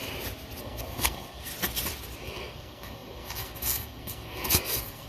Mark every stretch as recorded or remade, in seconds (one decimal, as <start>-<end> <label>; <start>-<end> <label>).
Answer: 0.0-0.6 recorded; 0.6-1.5 remade; 1.5-2.2 recorded; 2.2-5.1 remade